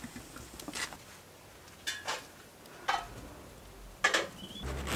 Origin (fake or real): real